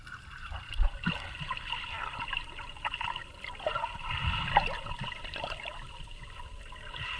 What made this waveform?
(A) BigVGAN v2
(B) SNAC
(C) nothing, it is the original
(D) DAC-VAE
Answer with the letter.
A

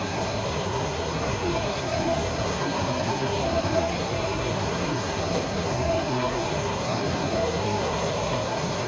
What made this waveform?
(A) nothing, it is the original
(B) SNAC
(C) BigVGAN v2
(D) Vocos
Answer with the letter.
B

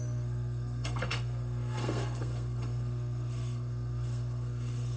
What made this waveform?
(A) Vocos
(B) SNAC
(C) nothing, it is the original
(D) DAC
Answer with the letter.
B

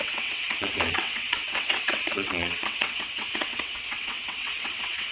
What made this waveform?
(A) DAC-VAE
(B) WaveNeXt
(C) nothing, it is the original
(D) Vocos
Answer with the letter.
B